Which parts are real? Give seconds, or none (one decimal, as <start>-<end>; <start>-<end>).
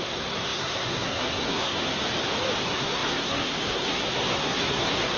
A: 1.8-2.6